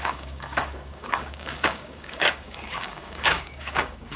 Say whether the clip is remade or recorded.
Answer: remade